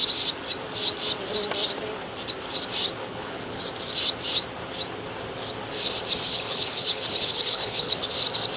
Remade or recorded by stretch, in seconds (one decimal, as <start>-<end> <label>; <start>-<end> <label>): 0.0-3.0 recorded; 3.0-3.6 remade; 3.6-6.3 recorded; 6.3-8.1 remade; 8.1-8.6 recorded

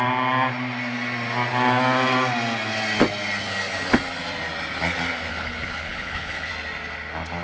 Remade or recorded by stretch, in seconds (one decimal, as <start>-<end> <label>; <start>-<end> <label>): 0.0-5.3 recorded; 5.3-6.5 remade; 6.5-7.4 recorded

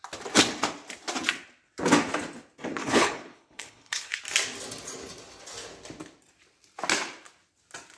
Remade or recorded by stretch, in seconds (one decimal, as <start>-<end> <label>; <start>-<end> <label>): 0.0-2.8 recorded; 2.8-4.2 remade; 4.2-8.0 recorded